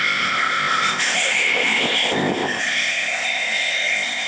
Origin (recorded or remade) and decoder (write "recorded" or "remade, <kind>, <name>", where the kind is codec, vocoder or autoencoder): remade, codec, ZipCodec